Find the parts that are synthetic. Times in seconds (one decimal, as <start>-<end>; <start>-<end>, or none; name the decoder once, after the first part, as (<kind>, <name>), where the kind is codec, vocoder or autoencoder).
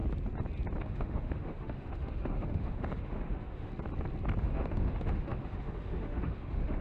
0.8-3.7 (autoencoder, DAC-VAE); 4.4-6.8